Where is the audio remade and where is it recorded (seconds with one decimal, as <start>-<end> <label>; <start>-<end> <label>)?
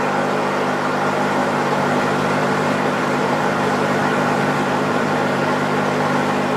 0.0-1.4 recorded; 1.4-5.4 remade; 5.4-6.6 recorded